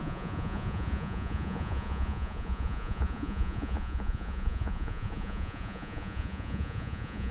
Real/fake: fake